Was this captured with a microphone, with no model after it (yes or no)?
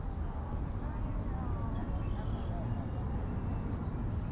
yes